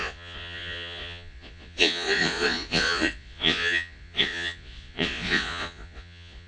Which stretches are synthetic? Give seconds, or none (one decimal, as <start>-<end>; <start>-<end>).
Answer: 0.0-6.5